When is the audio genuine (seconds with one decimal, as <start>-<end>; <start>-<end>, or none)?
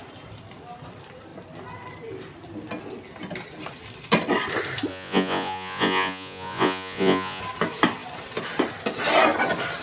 0.0-4.9; 7.4-9.8